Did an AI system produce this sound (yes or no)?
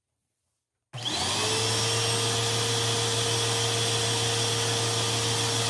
no